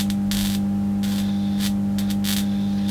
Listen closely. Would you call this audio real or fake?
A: real